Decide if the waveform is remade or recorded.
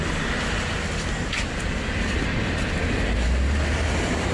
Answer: recorded